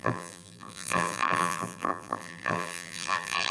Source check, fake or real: fake